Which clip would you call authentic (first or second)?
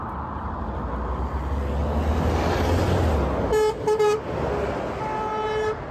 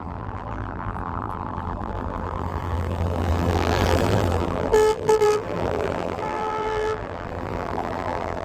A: first